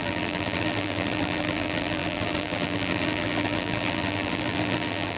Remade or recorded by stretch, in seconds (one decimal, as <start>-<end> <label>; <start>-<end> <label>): 0.0-5.2 remade